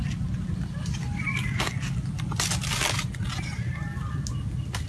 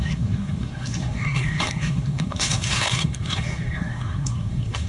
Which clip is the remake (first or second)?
second